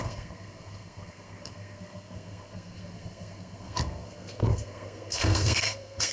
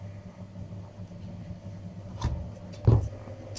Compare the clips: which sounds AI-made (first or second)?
first